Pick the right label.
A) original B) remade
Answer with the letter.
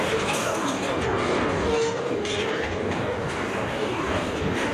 B